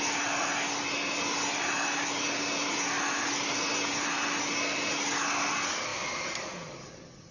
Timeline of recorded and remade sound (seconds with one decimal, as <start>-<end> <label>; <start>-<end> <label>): 0.0-7.3 recorded